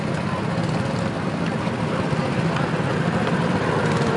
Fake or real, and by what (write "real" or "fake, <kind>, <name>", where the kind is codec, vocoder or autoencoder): real